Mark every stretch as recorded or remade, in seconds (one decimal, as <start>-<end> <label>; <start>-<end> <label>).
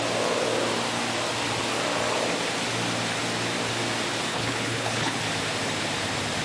0.0-4.3 recorded; 4.3-5.2 remade; 5.2-6.4 recorded